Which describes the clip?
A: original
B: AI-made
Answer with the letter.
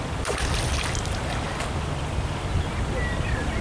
A